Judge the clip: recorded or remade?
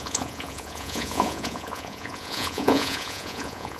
remade